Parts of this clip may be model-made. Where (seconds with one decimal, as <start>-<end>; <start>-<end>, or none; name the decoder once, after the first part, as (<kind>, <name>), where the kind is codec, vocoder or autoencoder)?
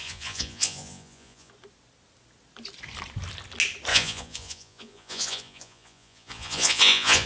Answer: 0.0-1.5 (vocoder, Vocos); 3.9-7.3